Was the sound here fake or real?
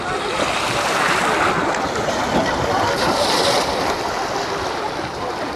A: real